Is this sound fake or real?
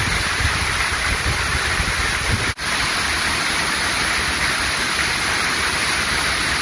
real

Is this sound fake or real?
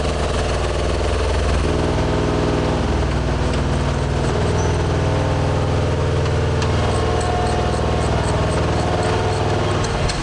real